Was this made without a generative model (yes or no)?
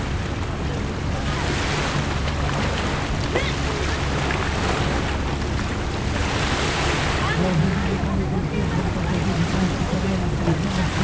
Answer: yes